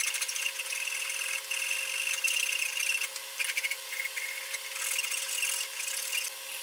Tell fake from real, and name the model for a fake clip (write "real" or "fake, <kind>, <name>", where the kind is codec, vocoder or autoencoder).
real